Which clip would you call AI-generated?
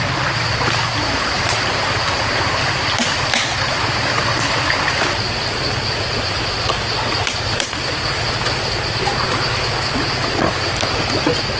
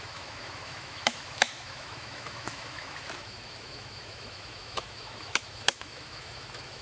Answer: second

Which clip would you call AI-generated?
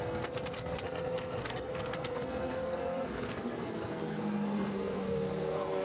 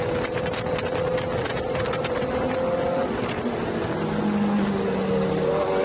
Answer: first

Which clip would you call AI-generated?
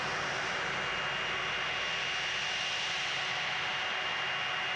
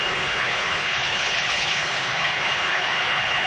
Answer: second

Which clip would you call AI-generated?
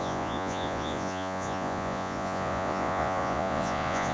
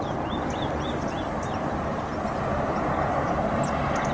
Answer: first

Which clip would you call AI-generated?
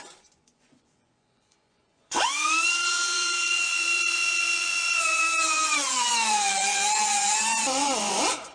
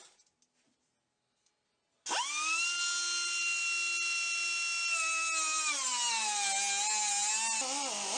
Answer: first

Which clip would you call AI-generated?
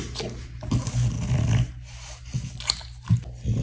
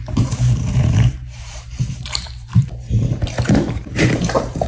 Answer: second